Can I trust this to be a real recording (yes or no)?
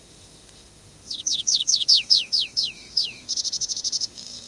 no